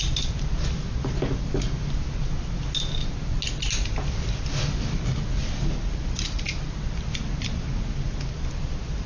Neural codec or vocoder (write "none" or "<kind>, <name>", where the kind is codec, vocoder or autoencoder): none